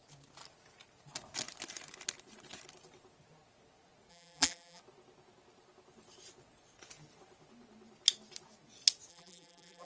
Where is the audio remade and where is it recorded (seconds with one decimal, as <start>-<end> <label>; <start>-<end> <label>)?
0.0-4.1 recorded; 4.1-4.8 remade; 4.8-9.1 recorded; 9.1-9.9 remade